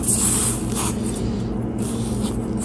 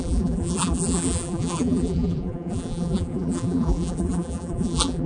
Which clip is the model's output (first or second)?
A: second